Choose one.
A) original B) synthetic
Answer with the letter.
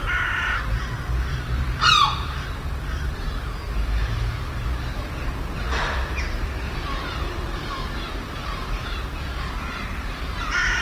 B